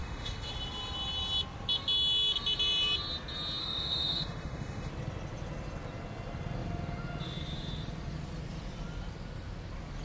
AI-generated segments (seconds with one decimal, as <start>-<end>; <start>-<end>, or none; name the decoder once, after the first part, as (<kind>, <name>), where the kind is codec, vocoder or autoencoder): 0.0-0.5 (autoencoder, DAC-VAE); 3.6-4.9